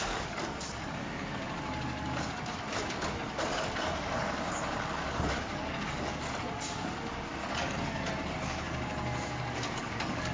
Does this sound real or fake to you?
fake